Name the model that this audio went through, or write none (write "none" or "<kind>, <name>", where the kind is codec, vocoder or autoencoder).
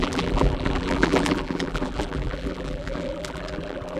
vocoder, BigVGAN v2